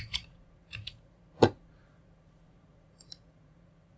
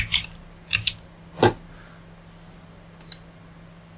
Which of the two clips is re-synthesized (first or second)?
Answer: first